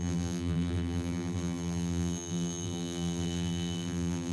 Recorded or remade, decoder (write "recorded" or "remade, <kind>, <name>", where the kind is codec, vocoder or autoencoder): remade, vocoder, BigVGAN v2